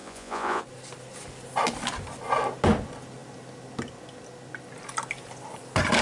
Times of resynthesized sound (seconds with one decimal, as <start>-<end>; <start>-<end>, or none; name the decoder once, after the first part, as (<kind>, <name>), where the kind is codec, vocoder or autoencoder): 0.0-0.6 (vocoder, Vocos)